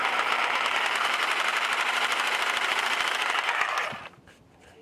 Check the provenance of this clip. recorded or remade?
recorded